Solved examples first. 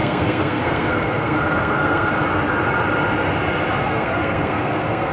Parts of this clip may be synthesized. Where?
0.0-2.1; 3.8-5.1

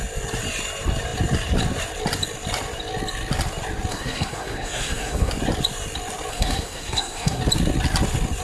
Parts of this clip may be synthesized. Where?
3.9-5.3; 6.3-7.4

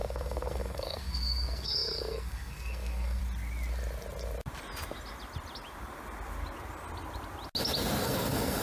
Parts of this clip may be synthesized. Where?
0.0-3.2; 8.0-8.6

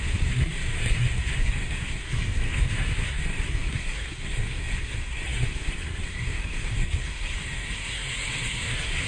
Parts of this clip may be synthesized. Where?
0.0-9.1

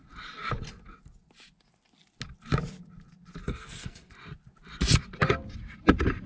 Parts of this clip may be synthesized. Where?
3.4-4.1